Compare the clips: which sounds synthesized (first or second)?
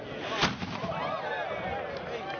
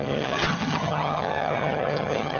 second